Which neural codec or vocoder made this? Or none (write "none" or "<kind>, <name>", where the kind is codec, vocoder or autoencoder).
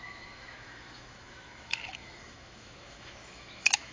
autoencoder, DAC-VAE